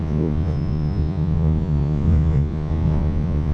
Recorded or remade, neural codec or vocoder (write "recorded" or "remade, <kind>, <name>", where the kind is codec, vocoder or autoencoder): remade, vocoder, Vocos